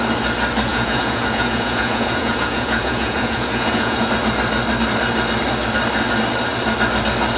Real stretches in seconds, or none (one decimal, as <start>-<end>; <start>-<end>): 0.0-0.7; 4.1-7.4